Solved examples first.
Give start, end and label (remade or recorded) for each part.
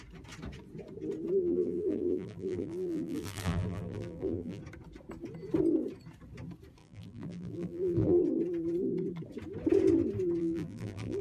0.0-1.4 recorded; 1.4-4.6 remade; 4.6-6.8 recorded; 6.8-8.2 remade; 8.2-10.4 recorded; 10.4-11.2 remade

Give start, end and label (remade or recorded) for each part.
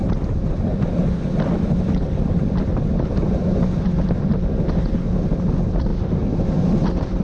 0.0-0.7 recorded; 0.7-5.0 remade; 5.0-7.2 recorded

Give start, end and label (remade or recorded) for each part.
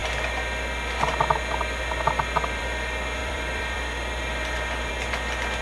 0.0-3.2 recorded; 3.2-4.9 remade; 4.9-5.6 recorded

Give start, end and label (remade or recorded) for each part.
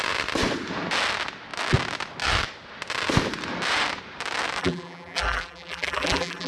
0.0-4.6 recorded; 4.6-6.5 remade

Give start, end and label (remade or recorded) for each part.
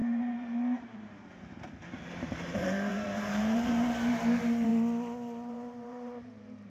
0.0-4.7 remade; 4.7-5.5 recorded; 5.5-6.7 remade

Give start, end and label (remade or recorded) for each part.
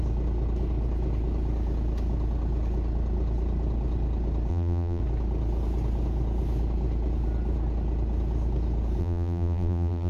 0.0-4.5 recorded; 4.5-5.0 remade; 5.0-9.0 recorded; 9.0-10.1 remade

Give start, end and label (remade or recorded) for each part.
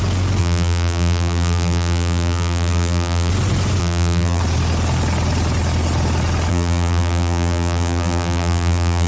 0.0-0.4 recorded; 0.4-3.3 remade; 3.3-3.8 recorded; 3.8-4.4 remade; 4.4-6.5 recorded; 6.5-9.1 remade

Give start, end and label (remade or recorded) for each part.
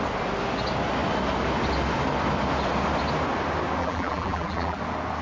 0.0-3.8 recorded; 3.8-4.8 remade; 4.8-5.2 recorded